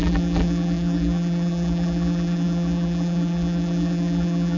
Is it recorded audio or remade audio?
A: remade